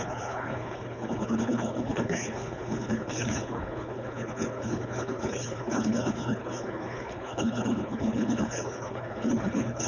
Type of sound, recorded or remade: remade